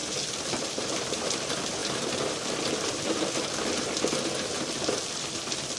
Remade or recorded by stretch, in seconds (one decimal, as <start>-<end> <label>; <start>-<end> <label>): 0.0-0.6 recorded; 0.6-1.8 remade; 1.8-4.1 recorded; 4.1-5.8 remade